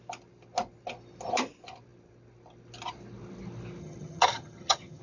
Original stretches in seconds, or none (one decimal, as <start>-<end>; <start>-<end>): 0.0-3.8